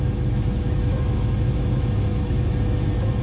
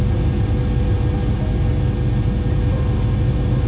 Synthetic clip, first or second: first